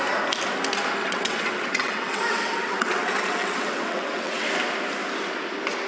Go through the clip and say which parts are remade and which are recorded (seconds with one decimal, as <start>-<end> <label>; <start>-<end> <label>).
0.0-1.0 recorded; 1.0-4.5 remade; 4.5-5.9 recorded